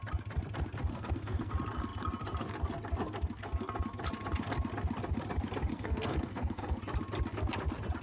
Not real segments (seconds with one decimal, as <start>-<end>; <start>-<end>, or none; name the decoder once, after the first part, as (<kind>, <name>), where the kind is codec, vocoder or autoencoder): 0.9-1.5 (codec, SNAC); 5.7-6.8